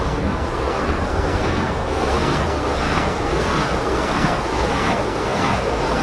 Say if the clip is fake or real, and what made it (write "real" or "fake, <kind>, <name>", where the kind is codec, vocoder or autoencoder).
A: fake, codec, SNAC